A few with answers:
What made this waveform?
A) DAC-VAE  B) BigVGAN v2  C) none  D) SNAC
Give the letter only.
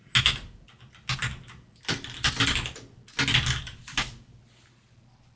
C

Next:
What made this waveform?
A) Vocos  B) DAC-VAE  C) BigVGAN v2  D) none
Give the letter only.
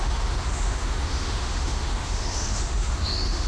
B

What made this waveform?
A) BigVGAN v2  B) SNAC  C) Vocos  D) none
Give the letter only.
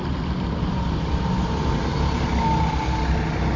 D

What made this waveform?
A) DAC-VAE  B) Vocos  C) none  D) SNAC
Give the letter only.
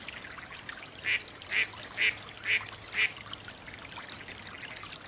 C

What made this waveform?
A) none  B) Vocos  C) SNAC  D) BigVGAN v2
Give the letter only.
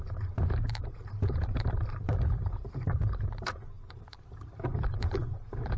D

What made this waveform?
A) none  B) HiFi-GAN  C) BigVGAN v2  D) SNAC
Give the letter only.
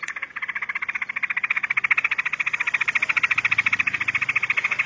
A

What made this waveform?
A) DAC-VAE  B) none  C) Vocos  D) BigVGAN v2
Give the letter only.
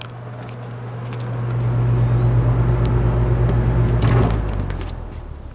B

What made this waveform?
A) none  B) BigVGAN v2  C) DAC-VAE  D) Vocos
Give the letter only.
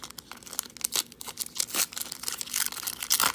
A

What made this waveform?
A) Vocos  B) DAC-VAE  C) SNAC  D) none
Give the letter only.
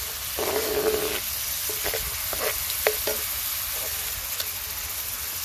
D